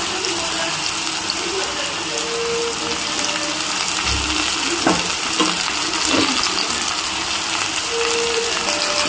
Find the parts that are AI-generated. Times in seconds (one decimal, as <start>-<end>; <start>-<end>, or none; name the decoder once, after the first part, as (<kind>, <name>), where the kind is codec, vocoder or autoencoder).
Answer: none